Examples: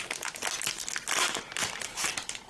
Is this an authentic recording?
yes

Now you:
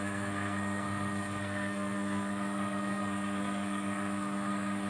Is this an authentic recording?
no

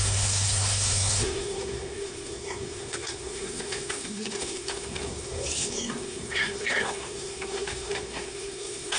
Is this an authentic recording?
no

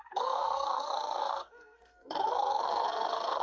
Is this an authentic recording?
no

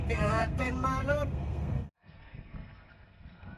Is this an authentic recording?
no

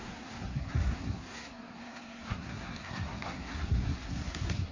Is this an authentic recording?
no